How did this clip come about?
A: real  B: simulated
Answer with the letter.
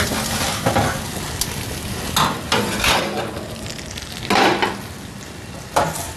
A